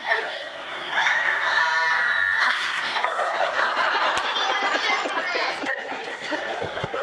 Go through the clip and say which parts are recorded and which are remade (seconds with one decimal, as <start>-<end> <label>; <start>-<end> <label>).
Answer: 0.0-1.6 remade; 1.6-2.4 recorded; 2.4-3.7 remade; 3.7-5.6 recorded; 5.6-7.0 remade